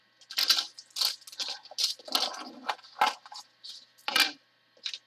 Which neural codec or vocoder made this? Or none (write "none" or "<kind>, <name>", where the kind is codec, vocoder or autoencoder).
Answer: none